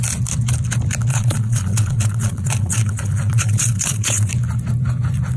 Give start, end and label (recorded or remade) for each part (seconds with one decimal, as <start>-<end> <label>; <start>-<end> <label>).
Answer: 0.0-1.1 recorded; 1.1-4.3 remade; 4.3-5.4 recorded